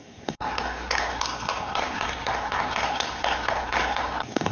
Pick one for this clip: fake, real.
fake